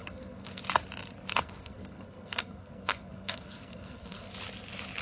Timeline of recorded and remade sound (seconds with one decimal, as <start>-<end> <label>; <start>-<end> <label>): 0.0-0.6 remade; 0.6-1.3 recorded; 1.3-4.3 remade; 4.3-5.0 recorded